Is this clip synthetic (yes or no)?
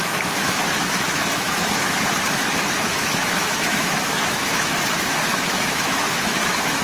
yes